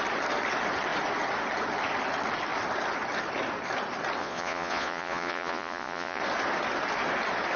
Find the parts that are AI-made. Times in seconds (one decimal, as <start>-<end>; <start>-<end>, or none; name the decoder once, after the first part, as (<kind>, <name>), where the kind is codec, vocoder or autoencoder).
4.2-6.2 (vocoder, Vocos)